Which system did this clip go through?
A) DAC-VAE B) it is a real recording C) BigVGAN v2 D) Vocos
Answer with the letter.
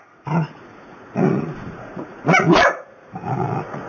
D